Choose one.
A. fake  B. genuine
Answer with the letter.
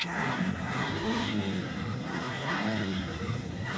A